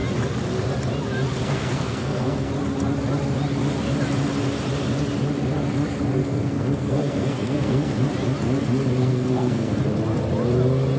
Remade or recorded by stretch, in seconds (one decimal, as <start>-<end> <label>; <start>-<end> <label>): 0.0-1.4 recorded; 1.4-2.5 remade; 2.5-6.2 recorded; 6.2-8.1 remade; 8.1-9.0 recorded; 9.0-9.8 remade; 9.8-11.0 recorded